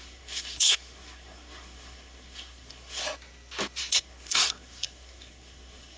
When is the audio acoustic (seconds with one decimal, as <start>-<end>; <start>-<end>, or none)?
3.0-3.8